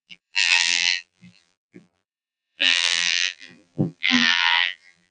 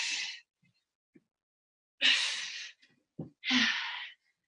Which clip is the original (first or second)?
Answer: second